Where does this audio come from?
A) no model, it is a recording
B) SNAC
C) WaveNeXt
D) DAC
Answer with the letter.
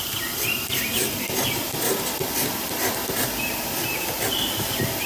A